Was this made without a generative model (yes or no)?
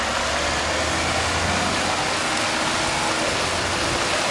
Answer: yes